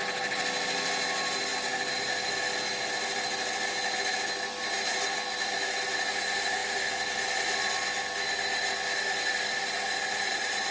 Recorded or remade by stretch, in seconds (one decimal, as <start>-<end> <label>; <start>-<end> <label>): 0.0-10.7 recorded